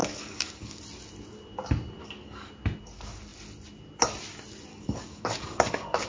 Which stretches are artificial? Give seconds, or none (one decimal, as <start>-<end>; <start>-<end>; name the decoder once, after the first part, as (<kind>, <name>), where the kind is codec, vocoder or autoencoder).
0.0-0.8 (codec, DAC); 2.0-2.5; 4.7-6.1